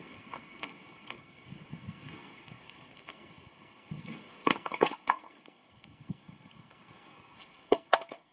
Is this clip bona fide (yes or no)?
no